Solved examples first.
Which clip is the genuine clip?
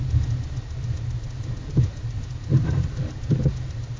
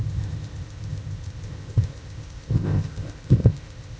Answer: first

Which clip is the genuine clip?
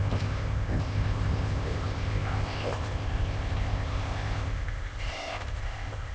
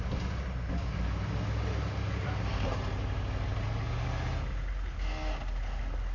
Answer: second